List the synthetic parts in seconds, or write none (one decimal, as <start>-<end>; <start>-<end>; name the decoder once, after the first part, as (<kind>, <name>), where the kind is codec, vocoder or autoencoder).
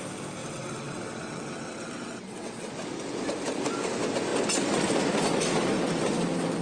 0.4-2.7 (vocoder, WaveNeXt)